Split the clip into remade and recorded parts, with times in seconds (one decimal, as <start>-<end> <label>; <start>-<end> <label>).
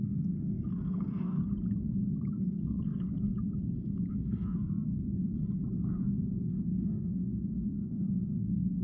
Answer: 0.0-1.4 remade; 1.4-2.3 recorded; 2.3-3.3 remade; 3.3-4.1 recorded; 4.1-5.1 remade; 5.1-5.9 recorded; 5.9-8.8 remade